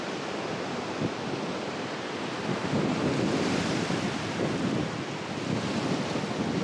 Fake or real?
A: real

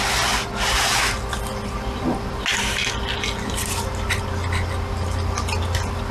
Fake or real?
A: real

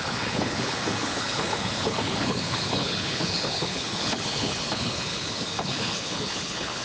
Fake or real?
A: fake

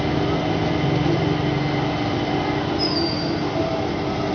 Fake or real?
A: real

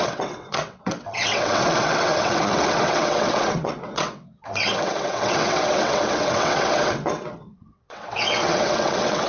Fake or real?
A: fake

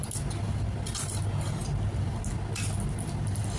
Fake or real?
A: real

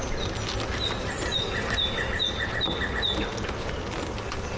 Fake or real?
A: real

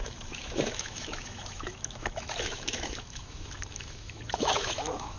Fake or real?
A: fake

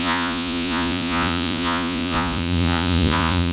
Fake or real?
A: fake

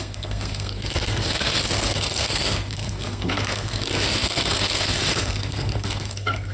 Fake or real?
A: fake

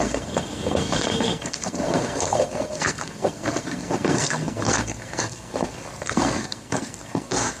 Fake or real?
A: fake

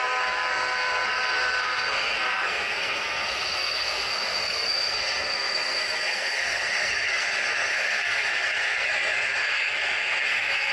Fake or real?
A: fake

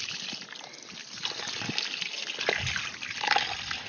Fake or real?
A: real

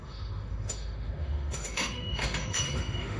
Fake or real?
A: fake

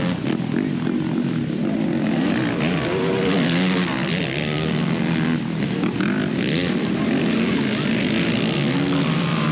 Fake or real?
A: real